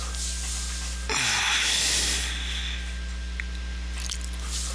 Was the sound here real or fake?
real